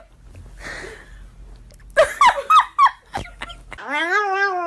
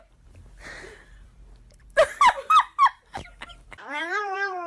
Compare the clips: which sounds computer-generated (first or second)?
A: second